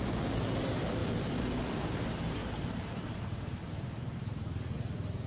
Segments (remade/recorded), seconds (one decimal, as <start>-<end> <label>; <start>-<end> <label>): 0.0-2.4 remade; 2.4-3.2 recorded; 3.2-5.3 remade